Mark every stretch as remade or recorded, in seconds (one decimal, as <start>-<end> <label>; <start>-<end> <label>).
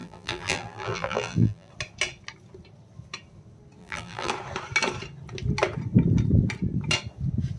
0.0-1.7 remade; 1.7-3.8 recorded; 3.8-4.3 remade; 4.3-7.6 recorded